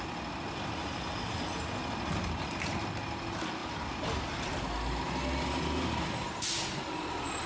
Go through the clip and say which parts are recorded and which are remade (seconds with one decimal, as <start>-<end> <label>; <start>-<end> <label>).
0.0-7.5 recorded